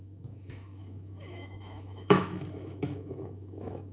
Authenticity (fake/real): fake